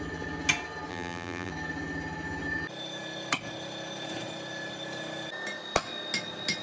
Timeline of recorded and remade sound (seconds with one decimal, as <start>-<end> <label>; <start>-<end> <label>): 0.0-0.9 recorded; 0.9-1.5 remade; 1.5-6.6 recorded